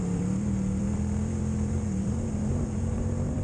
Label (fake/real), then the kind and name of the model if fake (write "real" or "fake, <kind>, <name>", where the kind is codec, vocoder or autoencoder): fake, vocoder, BigVGAN v2